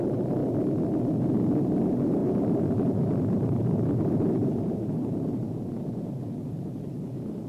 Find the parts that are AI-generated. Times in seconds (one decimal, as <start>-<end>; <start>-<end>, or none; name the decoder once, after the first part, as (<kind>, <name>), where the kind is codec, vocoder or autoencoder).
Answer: 0.0-0.4 (vocoder, BigVGAN v2); 1.2-7.5